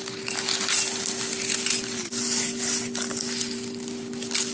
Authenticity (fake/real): real